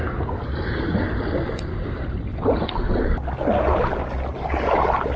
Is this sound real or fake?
real